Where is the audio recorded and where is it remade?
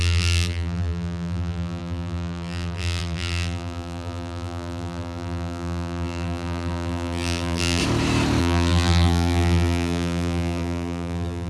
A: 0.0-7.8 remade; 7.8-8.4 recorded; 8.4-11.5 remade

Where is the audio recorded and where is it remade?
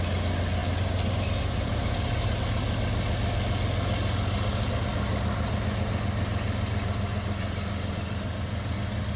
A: 0.0-0.6 recorded; 0.6-2.4 remade; 2.4-9.2 recorded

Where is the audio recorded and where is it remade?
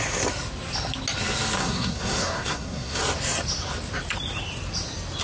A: 0.0-1.6 recorded; 1.6-3.0 remade; 3.0-5.2 recorded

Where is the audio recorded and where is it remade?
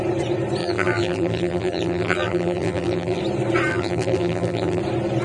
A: 0.0-0.6 recorded; 0.6-3.2 remade; 3.2-3.7 recorded; 3.7-4.8 remade; 4.8-5.2 recorded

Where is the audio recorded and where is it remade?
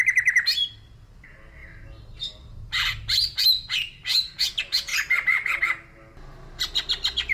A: 0.0-1.6 recorded; 1.6-3.4 remade; 3.4-7.3 recorded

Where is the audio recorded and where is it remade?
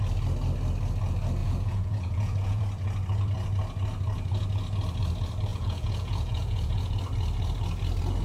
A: 0.0-1.4 recorded; 1.4-2.6 remade; 2.6-5.5 recorded; 5.5-6.9 remade; 6.9-8.2 recorded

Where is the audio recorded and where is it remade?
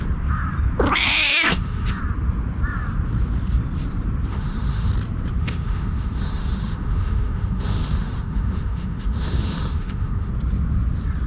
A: 0.0-1.3 recorded; 1.3-2.0 remade; 2.0-4.3 recorded; 4.3-4.9 remade; 4.9-5.4 recorded; 5.4-10.3 remade; 10.3-11.3 recorded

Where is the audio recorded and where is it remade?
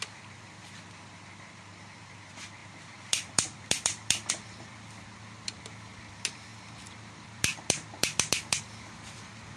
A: 0.0-9.6 remade